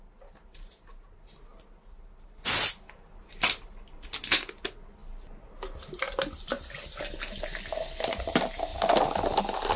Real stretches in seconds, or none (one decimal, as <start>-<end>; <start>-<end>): 0.0-9.8